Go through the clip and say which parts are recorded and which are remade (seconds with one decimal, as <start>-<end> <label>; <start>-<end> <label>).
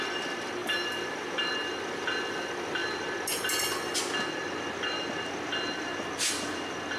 0.0-7.0 recorded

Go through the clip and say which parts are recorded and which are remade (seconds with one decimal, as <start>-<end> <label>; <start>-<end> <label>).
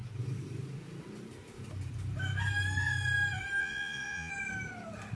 0.0-3.6 recorded; 3.6-4.3 remade; 4.3-5.2 recorded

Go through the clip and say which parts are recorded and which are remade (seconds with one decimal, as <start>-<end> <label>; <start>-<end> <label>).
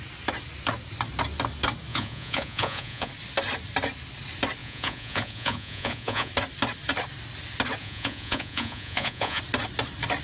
0.0-1.9 recorded; 1.9-3.1 remade; 3.1-4.6 recorded; 4.6-6.3 remade; 6.3-7.8 recorded; 7.8-9.4 remade; 9.4-10.2 recorded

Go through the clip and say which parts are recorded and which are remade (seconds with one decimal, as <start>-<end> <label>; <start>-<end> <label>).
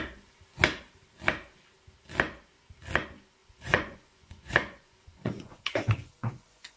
0.0-3.4 recorded; 3.4-6.8 remade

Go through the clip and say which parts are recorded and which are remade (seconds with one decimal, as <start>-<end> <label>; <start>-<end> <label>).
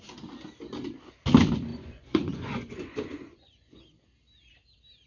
0.0-1.7 recorded; 1.7-3.8 remade; 3.8-5.1 recorded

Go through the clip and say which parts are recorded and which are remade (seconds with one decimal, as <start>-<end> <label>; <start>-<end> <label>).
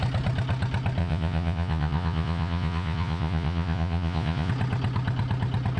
0.0-1.0 recorded; 1.0-4.5 remade; 4.5-5.8 recorded